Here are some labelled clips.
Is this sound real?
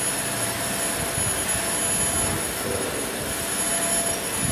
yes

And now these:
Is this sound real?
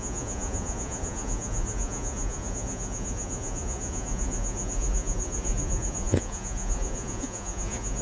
no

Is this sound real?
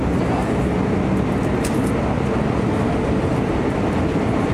yes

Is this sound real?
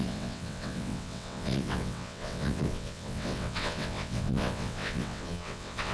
no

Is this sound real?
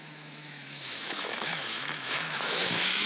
no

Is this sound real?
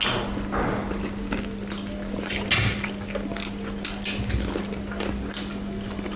yes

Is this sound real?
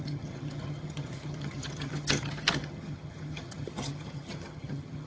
no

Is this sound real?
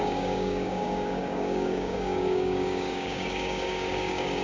no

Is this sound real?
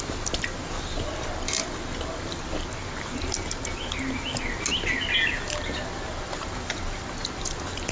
yes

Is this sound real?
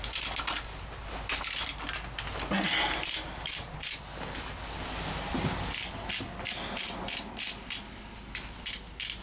yes